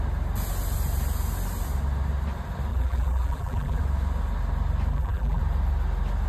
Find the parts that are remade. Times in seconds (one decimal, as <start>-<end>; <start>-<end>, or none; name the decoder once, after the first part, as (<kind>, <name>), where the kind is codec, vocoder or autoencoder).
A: 2.7-3.8 (vocoder, BigVGAN v2); 4.9-5.4